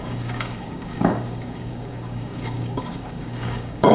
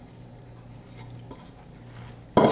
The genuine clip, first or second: second